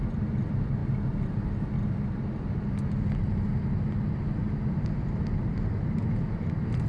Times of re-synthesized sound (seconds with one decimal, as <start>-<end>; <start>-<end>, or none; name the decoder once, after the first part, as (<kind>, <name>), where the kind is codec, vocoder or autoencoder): none